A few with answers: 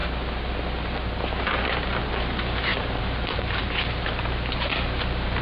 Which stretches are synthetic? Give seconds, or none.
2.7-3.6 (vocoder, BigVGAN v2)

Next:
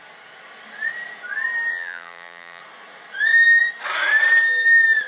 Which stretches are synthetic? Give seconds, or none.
1.7-2.6 (vocoder, BigVGAN v2)

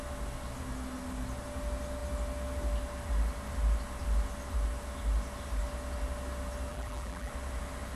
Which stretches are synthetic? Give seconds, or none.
6.7-7.3 (vocoder, BigVGAN v2)